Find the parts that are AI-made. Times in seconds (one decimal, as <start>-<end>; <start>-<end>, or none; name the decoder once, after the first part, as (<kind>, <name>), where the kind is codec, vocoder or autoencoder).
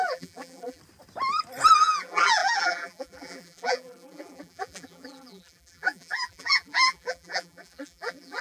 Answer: 0.0-0.8 (vocoder, BigVGAN v2); 1.8-8.4